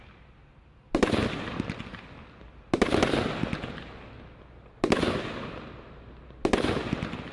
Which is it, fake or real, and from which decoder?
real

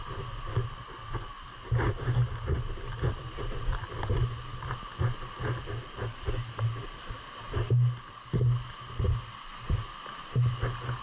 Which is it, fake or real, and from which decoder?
real